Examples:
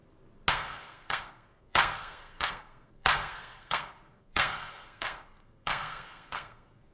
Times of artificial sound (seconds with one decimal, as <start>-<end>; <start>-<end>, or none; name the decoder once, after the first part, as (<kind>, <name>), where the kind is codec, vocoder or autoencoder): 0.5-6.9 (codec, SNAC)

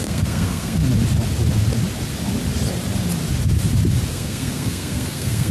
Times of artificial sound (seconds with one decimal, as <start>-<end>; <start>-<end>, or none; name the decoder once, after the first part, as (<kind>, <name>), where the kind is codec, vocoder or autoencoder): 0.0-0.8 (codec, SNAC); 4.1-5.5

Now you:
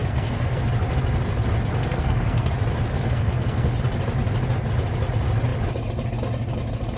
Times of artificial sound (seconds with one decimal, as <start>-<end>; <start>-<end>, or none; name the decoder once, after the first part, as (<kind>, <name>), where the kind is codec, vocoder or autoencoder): 0.0-0.6 (codec, SNAC); 1.8-2.5; 2.9-3.7

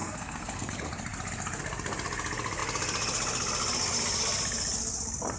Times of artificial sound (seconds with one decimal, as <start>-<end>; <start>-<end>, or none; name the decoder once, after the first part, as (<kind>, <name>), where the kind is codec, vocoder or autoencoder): 0.0-0.7 (codec, SNAC)

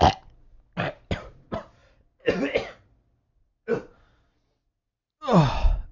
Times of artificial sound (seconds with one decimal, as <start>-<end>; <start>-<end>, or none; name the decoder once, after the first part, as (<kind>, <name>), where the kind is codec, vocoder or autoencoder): none

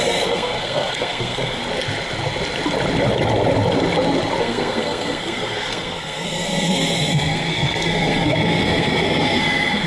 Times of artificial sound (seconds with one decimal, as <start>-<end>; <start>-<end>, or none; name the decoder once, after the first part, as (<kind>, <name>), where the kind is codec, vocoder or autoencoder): 0.0-1.6 (codec, SNAC); 4.4-9.9

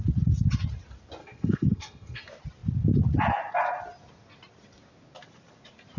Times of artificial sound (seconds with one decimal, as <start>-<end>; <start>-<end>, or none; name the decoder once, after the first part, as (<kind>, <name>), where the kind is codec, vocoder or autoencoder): 1.2-2.2 (codec, SNAC)